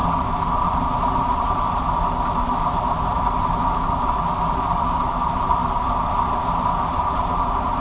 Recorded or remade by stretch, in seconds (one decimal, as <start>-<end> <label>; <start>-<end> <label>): 0.0-7.8 recorded